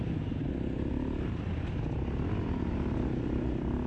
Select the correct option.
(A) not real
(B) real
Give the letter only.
B